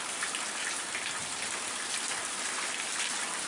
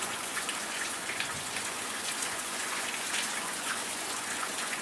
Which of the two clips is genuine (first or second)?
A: first